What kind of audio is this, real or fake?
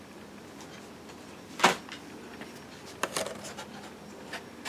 real